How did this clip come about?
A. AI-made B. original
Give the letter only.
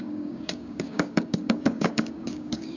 A